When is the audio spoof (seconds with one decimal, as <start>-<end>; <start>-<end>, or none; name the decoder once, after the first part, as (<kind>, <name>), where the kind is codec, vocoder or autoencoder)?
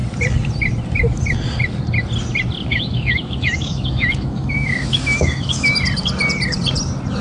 2.7-5.7 (autoencoder, DAC-VAE)